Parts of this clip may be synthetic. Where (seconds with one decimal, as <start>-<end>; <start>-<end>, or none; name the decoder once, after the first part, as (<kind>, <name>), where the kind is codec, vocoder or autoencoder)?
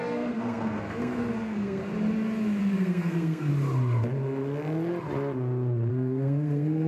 0.0-1.8 (codec, SNAC); 2.6-3.5; 5.9-6.9